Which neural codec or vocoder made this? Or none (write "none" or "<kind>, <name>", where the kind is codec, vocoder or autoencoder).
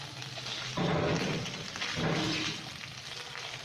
none